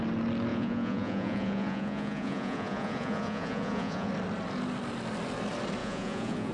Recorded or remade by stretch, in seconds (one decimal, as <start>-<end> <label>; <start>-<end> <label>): 0.0-0.5 recorded; 0.5-4.1 remade; 4.1-5.8 recorded; 5.8-6.5 remade